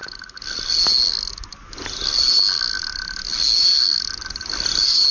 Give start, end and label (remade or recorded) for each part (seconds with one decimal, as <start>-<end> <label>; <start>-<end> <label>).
0.0-5.1 recorded

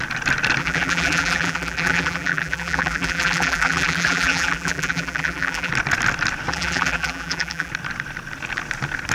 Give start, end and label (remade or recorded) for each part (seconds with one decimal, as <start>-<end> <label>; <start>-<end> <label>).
0.0-0.6 recorded; 0.6-5.7 remade; 5.7-6.5 recorded; 6.5-7.7 remade; 7.7-9.1 recorded

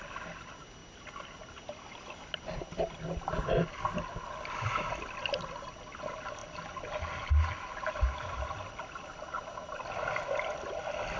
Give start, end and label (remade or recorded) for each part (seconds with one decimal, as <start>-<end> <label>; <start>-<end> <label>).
0.0-11.2 recorded

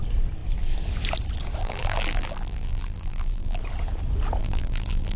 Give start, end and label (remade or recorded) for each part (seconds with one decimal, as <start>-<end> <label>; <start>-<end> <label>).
0.0-1.6 recorded; 1.6-3.6 remade; 3.6-4.4 recorded; 4.4-5.2 remade

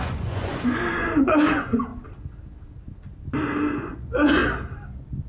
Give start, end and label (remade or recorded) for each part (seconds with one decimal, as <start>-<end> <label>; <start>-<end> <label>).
0.0-1.9 remade; 1.9-3.8 recorded; 3.8-4.4 remade; 4.4-5.3 recorded

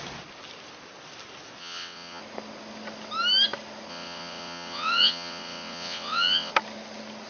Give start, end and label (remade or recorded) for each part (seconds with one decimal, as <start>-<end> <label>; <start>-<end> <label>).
0.0-1.6 recorded; 1.6-2.2 remade; 2.2-3.9 recorded; 3.9-6.5 remade; 6.5-7.3 recorded

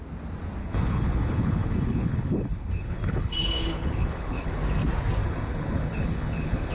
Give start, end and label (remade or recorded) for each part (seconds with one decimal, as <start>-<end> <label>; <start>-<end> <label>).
0.0-0.6 recorded; 0.6-4.6 remade; 4.6-5.2 recorded; 5.2-6.7 remade